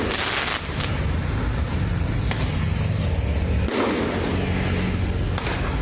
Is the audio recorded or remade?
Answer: recorded